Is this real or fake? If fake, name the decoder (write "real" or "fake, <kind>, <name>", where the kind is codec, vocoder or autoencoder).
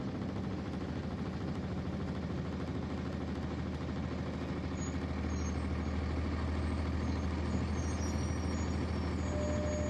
real